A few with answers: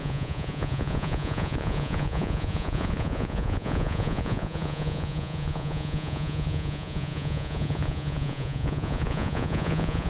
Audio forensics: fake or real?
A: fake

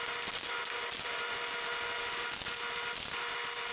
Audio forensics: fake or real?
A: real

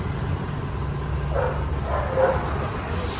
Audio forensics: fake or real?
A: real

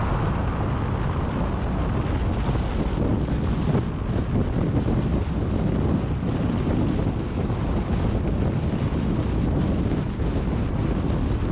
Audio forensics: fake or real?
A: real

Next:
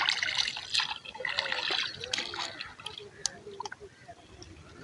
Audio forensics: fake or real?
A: real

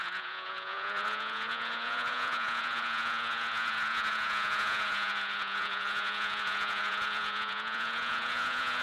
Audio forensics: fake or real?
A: fake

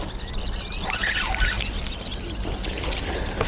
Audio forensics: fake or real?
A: real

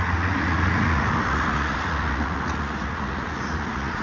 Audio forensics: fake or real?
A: fake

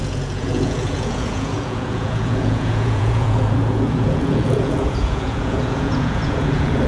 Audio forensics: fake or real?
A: fake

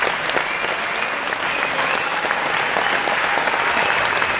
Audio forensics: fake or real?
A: real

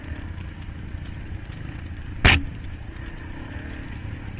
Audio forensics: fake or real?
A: real